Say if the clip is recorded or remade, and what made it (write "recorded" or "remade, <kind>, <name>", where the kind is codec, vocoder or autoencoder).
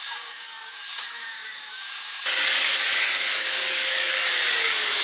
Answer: remade, codec, DAC